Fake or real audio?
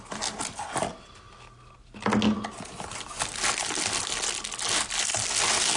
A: real